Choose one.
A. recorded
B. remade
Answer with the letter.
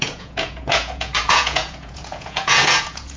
B